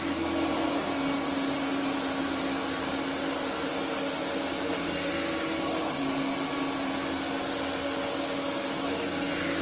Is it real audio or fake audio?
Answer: real